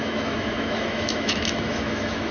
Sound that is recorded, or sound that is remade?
remade